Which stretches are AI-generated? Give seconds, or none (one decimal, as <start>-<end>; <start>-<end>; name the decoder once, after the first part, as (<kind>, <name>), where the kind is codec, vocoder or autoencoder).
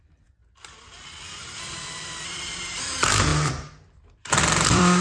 0.0-0.4 (vocoder, BigVGAN v2); 1.6-3.3; 4.4-5.0